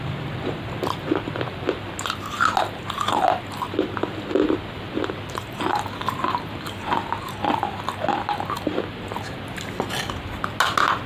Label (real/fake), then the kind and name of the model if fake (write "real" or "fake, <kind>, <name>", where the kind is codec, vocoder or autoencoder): real